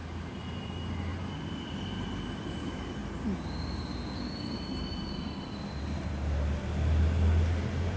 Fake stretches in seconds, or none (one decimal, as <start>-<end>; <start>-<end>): 0.6-1.1; 2.5-3.0